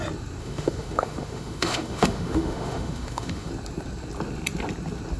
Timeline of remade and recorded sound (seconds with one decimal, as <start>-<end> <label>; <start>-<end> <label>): 0.0-0.4 recorded; 0.4-3.5 remade; 3.5-5.2 recorded